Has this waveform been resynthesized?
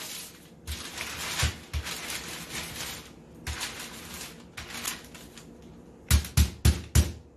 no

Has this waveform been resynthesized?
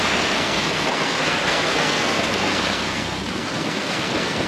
yes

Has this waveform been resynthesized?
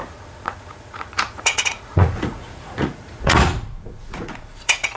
yes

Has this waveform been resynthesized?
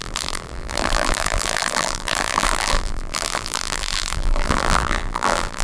yes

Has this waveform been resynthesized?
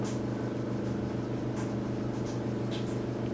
no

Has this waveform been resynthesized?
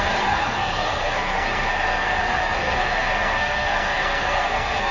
yes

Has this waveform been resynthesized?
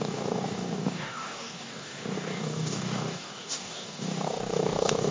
yes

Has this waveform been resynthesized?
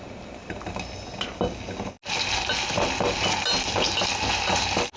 no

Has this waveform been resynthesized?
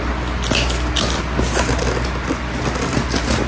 no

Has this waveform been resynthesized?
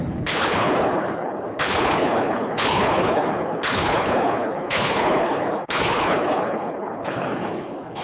yes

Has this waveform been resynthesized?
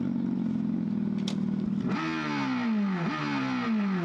no